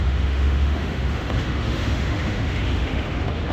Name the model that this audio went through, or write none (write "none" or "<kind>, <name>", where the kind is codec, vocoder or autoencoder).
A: autoencoder, DAC-VAE